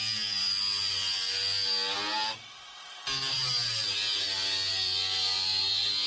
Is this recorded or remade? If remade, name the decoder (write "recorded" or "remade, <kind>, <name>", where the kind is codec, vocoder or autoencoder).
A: recorded